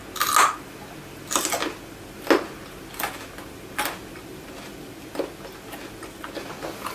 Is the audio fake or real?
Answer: real